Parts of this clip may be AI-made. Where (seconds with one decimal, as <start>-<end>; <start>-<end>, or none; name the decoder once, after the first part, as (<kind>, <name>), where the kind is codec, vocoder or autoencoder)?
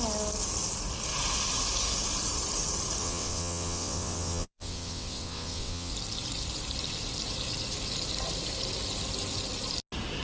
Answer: 3.0-5.9 (vocoder, WaveNeXt)